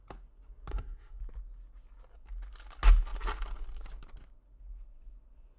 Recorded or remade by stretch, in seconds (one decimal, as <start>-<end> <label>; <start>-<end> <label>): 0.0-0.7 recorded; 0.7-1.2 remade; 1.2-5.6 recorded